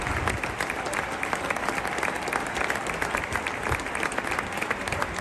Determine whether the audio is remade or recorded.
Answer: recorded